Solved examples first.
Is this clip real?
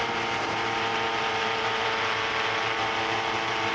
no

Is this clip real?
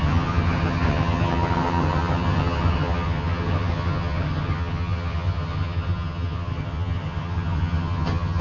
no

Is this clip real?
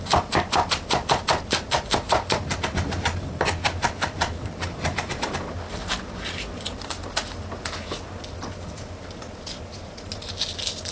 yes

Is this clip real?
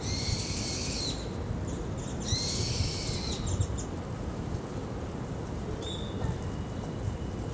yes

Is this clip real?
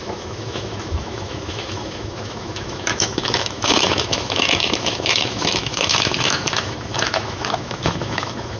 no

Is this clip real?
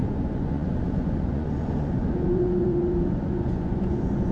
no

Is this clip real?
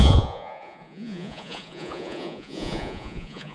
no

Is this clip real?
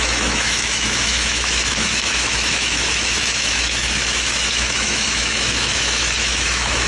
no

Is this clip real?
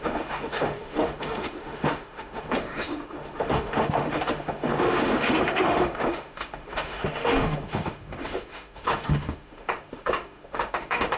no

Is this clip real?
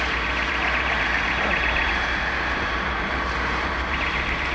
no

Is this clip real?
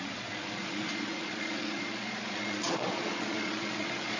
no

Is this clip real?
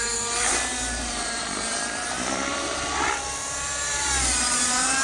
no